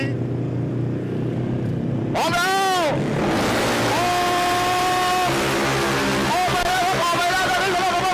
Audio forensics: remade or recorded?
recorded